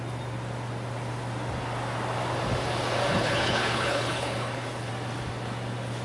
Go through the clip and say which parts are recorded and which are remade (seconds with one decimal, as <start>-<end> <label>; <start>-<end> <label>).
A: 0.0-3.1 recorded; 3.1-4.9 remade; 4.9-6.0 recorded